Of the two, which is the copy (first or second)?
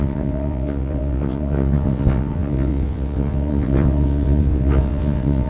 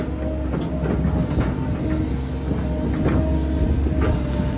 first